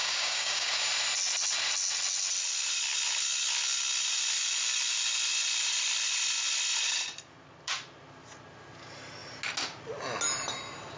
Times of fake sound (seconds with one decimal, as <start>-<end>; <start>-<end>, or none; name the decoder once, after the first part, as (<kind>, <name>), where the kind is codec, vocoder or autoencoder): 0.0-0.7 (codec, DAC)